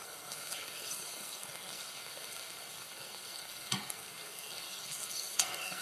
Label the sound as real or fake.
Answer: fake